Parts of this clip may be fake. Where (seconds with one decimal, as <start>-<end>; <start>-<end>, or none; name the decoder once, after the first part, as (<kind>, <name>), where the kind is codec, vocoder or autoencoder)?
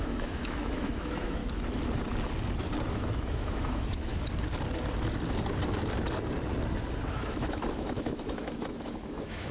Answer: 0.0-1.4 (autoencoder, DAC-VAE); 2.9-4.1; 7.1-9.5